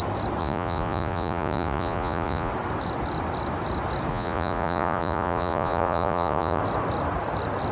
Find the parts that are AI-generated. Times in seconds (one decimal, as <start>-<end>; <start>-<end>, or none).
0.4-2.5; 4.1-6.6